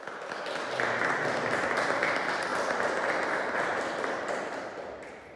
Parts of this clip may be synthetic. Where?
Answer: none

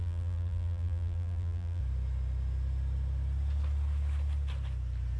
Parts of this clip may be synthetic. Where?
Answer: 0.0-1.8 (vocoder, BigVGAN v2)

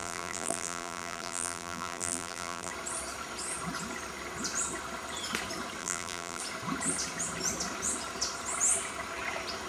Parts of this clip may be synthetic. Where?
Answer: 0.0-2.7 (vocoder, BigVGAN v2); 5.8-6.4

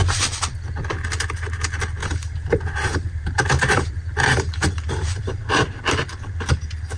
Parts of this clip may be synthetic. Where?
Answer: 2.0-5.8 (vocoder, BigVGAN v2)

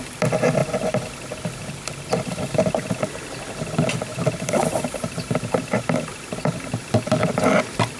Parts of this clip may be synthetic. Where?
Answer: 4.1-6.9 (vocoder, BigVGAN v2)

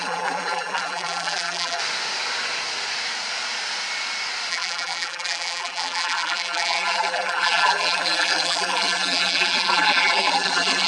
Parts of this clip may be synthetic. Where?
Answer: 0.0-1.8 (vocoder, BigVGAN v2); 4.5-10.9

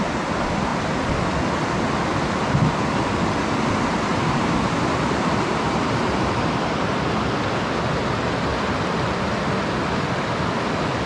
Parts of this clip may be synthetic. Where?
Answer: 4.1-7.0 (vocoder, BigVGAN v2)

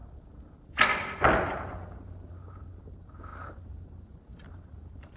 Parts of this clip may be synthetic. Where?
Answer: 1.4-5.2 (vocoder, BigVGAN v2)